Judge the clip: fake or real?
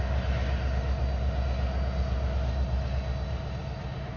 real